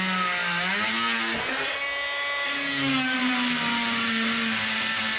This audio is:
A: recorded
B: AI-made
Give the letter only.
A